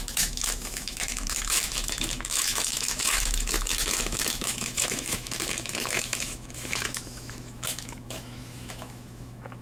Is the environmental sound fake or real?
fake